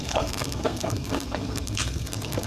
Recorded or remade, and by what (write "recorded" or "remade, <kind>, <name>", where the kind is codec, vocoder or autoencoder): remade, codec, SNAC